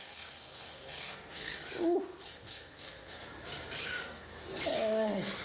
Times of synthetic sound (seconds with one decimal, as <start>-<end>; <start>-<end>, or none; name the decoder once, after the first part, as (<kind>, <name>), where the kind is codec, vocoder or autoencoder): 0.0-1.5 (codec, SNAC); 2.3-3.2; 3.8-4.4